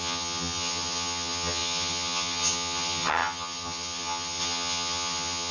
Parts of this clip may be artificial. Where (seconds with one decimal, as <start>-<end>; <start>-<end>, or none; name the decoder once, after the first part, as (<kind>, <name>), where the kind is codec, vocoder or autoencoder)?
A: 0.0-5.5 (vocoder, HiFi-GAN)